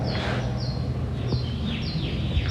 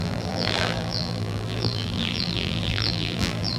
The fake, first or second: second